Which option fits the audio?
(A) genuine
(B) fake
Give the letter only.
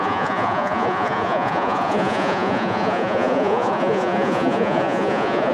B